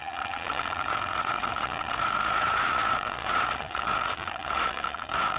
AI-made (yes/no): yes